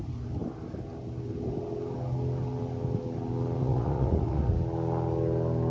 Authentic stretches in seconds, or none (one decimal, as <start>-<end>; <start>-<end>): 0.0-3.6; 4.5-5.7